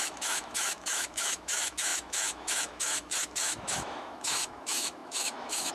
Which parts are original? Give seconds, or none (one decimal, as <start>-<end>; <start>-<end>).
none